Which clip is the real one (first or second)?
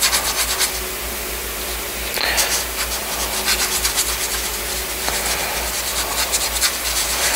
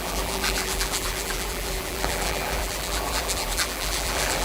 first